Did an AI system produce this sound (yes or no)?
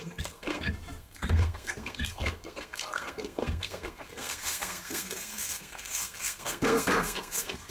yes